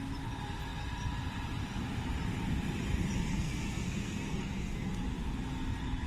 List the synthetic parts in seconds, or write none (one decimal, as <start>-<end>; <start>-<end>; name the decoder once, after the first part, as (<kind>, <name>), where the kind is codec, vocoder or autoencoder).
3.3-4.9 (codec, SNAC)